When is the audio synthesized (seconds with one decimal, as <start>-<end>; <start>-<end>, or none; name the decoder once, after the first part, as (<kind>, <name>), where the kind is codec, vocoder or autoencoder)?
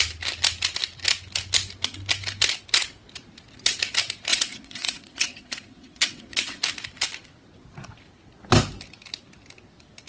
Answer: 4.3-6.6 (vocoder, WaveNeXt)